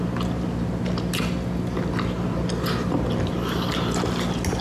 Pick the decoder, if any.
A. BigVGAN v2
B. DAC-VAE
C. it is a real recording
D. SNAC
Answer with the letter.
C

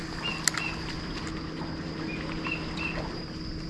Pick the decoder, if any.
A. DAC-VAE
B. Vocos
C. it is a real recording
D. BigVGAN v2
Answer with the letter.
C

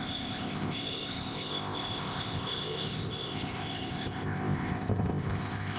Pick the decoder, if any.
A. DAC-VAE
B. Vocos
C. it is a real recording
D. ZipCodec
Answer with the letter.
D